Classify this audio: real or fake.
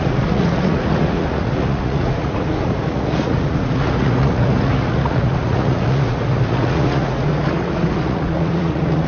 fake